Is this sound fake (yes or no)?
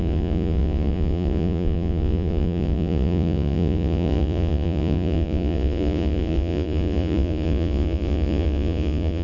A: yes